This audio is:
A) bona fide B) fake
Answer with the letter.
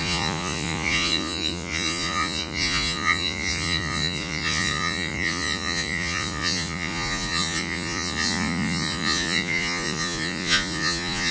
B